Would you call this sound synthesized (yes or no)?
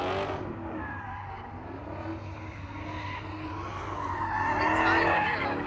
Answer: no